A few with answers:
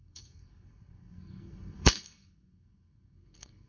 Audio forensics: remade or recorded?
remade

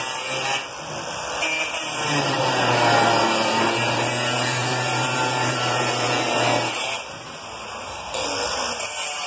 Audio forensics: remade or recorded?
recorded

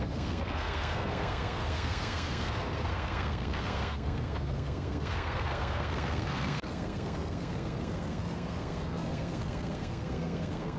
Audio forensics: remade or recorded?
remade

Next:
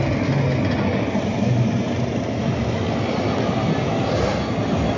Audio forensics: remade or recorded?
recorded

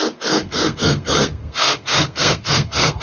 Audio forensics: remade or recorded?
remade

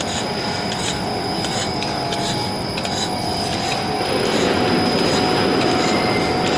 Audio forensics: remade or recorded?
recorded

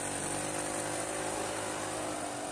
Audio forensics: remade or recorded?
recorded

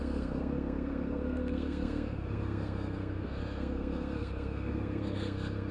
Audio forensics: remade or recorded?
remade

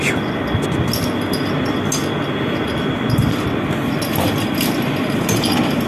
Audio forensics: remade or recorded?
recorded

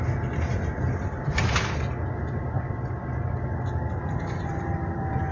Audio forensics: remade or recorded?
recorded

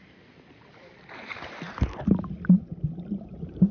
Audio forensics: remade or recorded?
recorded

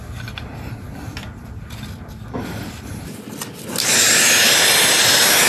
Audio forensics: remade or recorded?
recorded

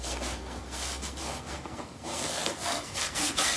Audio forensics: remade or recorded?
remade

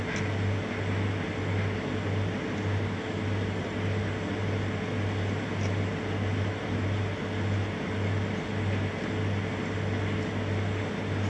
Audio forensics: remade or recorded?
recorded